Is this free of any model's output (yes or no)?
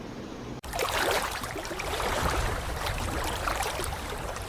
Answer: no